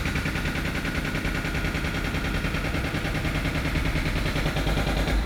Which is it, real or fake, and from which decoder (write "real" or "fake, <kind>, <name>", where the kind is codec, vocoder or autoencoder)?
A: real